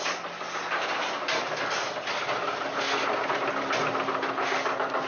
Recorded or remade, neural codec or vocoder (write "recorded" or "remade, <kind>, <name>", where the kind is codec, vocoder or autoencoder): recorded